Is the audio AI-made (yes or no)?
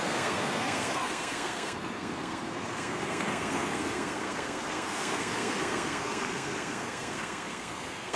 yes